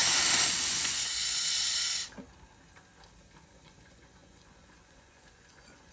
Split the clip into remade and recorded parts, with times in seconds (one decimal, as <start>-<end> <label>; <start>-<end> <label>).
0.0-0.6 recorded; 0.6-1.6 remade; 1.6-3.5 recorded; 3.5-5.9 remade

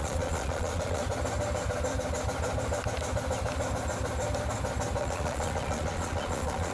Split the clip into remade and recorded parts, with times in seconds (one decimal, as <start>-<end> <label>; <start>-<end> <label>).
0.0-1.0 remade; 1.0-5.0 recorded; 5.0-6.7 remade

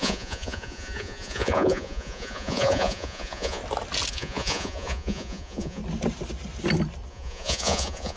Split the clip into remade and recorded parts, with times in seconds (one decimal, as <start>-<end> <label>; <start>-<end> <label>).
0.0-3.6 remade; 3.6-4.1 recorded; 4.1-5.8 remade; 5.8-7.1 recorded; 7.1-8.2 remade

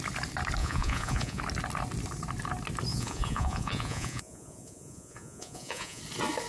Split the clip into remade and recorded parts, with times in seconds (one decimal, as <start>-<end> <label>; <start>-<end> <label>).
0.0-0.6 recorded; 0.6-1.4 remade; 1.4-2.9 recorded; 2.9-6.0 remade; 6.0-6.5 recorded